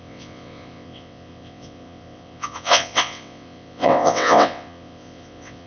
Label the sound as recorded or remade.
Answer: remade